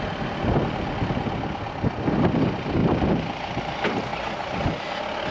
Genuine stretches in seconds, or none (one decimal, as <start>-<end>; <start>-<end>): 0.0-5.3